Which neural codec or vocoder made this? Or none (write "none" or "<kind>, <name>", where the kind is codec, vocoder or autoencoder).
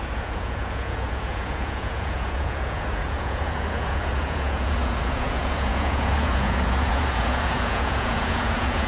vocoder, Vocos